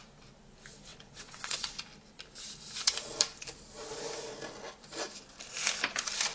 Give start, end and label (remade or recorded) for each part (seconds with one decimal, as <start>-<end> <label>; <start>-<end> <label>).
0.0-0.9 recorded; 0.9-1.7 remade; 1.7-6.3 recorded